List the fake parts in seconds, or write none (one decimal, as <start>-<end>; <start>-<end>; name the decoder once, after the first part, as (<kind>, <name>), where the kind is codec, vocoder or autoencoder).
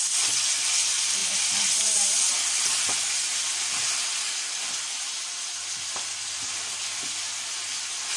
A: none